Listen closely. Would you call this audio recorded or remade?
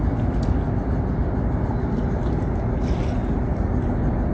recorded